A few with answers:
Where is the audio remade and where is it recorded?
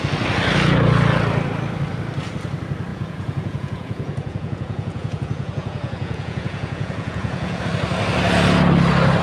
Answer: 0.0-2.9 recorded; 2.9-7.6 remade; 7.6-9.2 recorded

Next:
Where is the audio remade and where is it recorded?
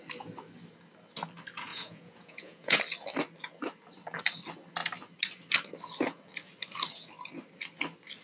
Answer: 0.0-1.7 recorded; 1.7-2.8 remade; 2.8-8.2 recorded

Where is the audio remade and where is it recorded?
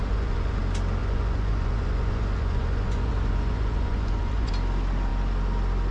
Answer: 0.0-0.6 remade; 0.6-1.0 recorded; 1.0-4.5 remade; 4.5-5.9 recorded